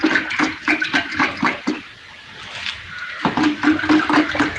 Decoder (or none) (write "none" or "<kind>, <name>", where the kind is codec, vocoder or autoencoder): none